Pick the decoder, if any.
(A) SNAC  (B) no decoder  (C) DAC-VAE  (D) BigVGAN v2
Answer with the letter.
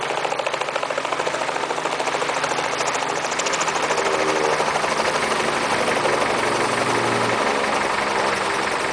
B